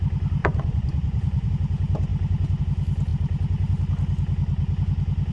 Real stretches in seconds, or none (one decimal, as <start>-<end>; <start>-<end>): 0.0-0.4; 1.5-5.3